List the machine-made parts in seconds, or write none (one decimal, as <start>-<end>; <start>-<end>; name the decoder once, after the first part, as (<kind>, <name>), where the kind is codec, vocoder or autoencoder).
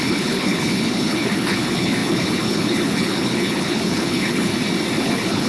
0.0-4.5 (codec, HILCodec); 5.0-5.5